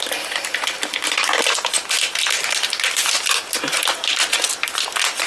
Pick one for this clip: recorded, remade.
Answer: recorded